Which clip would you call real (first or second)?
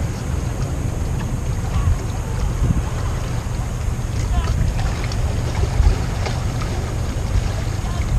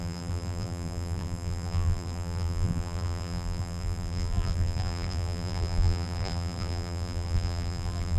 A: first